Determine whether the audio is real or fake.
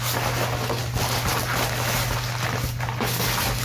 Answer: real